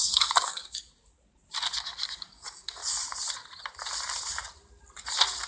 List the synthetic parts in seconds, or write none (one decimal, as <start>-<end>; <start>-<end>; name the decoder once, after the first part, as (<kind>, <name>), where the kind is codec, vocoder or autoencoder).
0.0-0.9 (codec, DAC); 1.8-2.8